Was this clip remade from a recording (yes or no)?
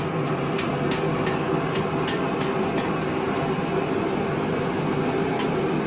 no